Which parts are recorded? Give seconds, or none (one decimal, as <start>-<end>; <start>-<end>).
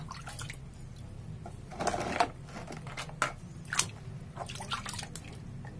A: 0.0-5.8